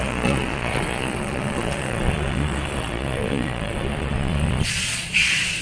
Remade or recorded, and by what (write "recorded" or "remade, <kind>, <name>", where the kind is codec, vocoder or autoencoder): remade, vocoder, Vocos